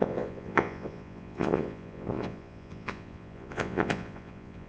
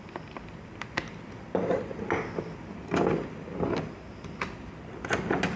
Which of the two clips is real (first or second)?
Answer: second